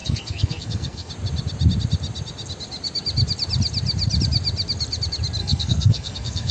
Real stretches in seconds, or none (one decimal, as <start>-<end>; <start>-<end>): 1.1-5.4